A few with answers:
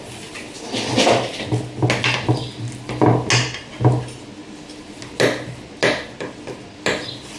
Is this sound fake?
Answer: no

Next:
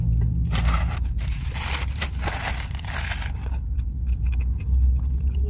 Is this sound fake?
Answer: no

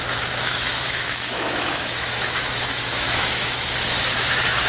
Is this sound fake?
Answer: yes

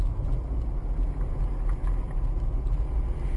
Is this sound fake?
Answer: no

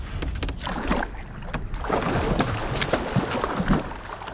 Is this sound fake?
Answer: no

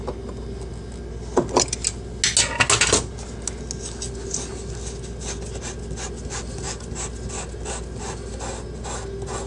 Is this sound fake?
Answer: no